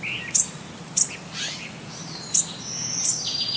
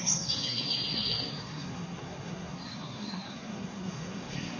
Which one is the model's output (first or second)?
second